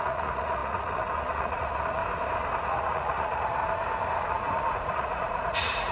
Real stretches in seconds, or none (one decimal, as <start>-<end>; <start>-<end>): 2.0-2.6; 3.6-4.3